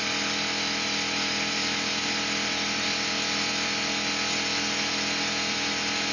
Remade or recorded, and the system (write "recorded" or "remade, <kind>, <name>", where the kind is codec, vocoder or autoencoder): recorded